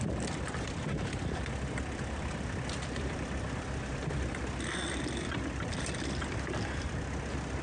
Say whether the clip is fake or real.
fake